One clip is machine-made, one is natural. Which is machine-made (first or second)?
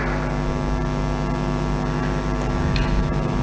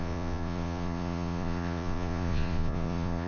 second